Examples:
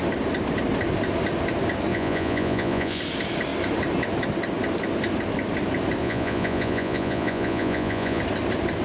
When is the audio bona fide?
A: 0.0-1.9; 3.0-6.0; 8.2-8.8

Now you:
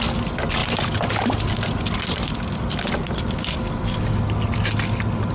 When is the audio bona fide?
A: 0.0-5.3

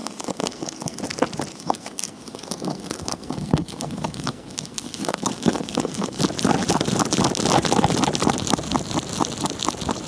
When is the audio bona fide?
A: 1.0-1.5; 6.2-10.1

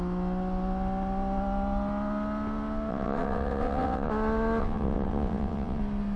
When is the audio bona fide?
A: 0.0-2.9; 4.1-4.6; 5.8-6.2

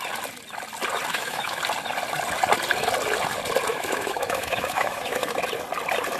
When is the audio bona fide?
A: 0.0-1.1; 1.6-3.7; 5.4-6.2

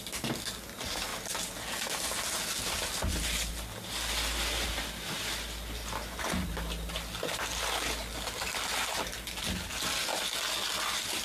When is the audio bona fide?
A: 0.0-11.2

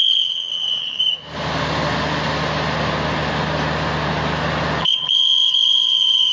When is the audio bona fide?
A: 1.0-4.8

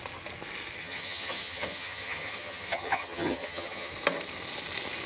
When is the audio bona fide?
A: 0.0-0.8; 3.9-5.1